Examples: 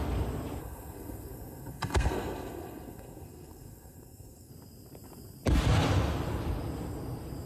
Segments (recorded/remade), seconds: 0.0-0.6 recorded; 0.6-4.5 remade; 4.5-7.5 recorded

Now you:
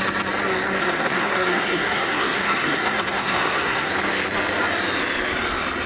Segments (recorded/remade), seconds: 0.0-0.8 recorded; 0.8-3.9 remade; 3.9-5.9 recorded

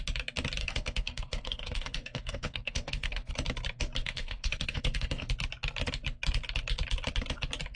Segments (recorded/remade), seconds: 0.0-0.6 recorded; 0.6-3.3 remade; 3.3-4.0 recorded; 4.0-5.3 remade; 5.3-7.8 recorded

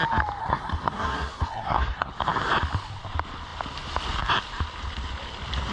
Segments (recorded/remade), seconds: 0.0-0.4 recorded; 0.4-2.1 remade; 2.1-5.7 recorded